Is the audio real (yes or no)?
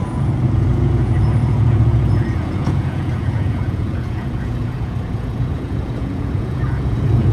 no